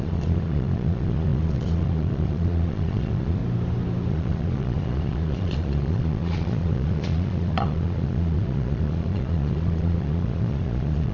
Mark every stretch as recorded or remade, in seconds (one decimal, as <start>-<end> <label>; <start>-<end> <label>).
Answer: 0.0-3.4 remade; 3.4-4.1 recorded; 4.1-11.1 remade